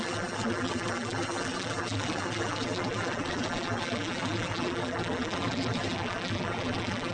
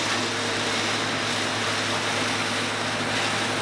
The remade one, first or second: first